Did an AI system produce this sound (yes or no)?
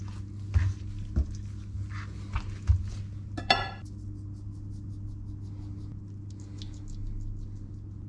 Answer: no